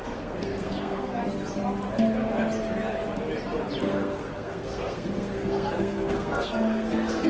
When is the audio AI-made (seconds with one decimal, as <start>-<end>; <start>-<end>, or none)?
0.0-1.2; 3.8-7.3